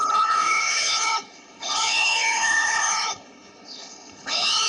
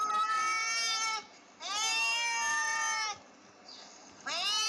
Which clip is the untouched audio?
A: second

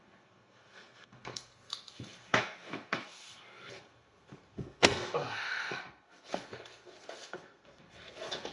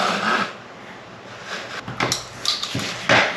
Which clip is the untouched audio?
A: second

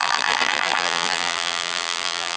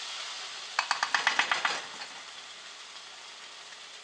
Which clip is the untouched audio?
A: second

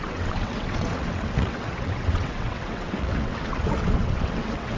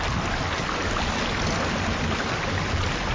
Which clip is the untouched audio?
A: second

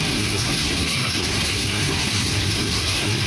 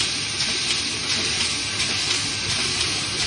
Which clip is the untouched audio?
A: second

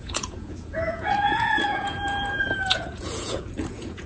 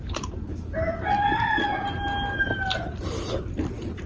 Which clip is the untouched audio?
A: second